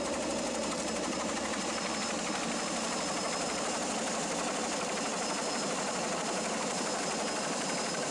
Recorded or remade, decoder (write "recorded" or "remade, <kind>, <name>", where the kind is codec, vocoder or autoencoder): recorded